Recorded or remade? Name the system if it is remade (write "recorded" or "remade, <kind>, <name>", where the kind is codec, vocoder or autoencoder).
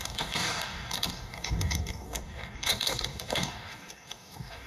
remade, codec, DAC